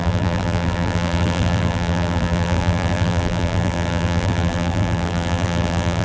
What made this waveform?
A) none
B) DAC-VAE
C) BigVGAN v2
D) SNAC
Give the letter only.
C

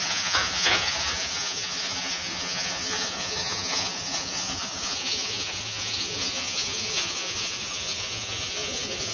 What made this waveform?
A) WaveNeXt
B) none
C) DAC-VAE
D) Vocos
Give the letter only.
D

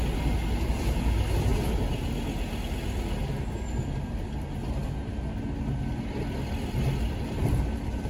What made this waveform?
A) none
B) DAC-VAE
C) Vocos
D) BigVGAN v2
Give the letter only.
A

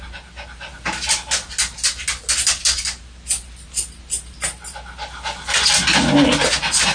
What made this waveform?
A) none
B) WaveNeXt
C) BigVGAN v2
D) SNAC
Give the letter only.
A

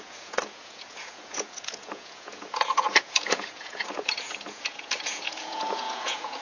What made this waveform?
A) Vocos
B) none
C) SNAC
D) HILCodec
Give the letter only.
A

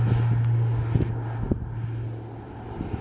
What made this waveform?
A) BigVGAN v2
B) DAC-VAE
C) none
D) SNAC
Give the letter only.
C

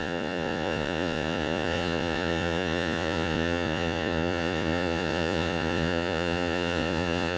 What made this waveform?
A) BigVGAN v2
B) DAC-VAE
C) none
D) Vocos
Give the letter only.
D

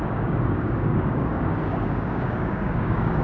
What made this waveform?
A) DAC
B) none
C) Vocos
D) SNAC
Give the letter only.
A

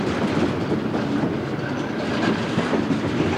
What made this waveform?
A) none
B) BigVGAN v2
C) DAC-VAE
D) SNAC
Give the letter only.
A